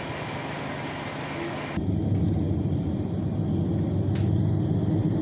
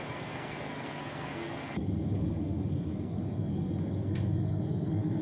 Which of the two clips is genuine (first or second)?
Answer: first